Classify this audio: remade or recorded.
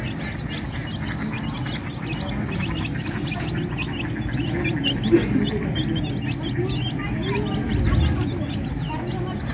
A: recorded